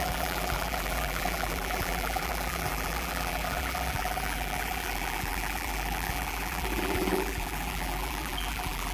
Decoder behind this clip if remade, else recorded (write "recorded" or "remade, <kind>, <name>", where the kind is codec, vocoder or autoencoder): remade, vocoder, BigVGAN v2